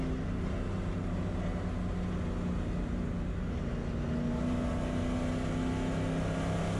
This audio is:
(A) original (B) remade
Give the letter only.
A